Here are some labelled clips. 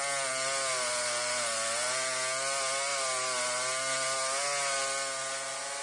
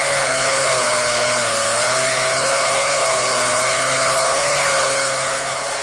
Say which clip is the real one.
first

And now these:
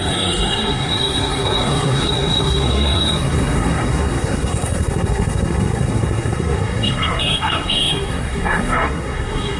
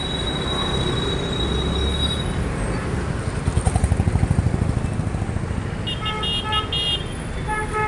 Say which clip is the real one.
second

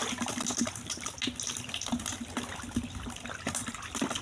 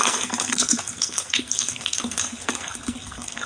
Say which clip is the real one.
first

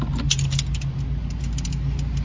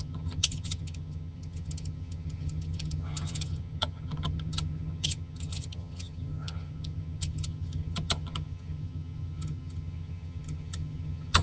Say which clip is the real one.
first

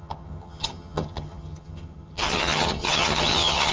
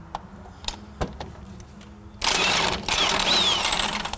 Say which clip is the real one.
second